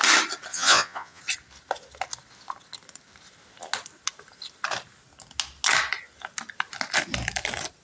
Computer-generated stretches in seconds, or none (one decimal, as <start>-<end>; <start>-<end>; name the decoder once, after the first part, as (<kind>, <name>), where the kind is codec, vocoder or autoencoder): 0.5-1.2 (vocoder, Vocos)